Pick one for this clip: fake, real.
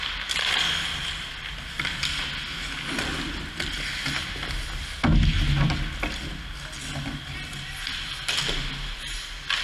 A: real